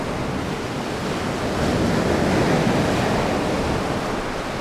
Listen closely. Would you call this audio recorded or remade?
recorded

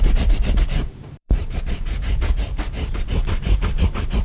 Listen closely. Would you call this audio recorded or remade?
remade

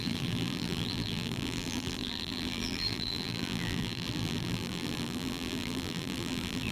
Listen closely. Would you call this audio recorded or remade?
remade